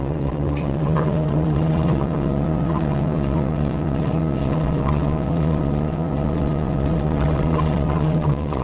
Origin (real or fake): fake